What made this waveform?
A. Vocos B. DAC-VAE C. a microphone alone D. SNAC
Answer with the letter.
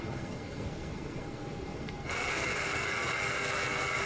D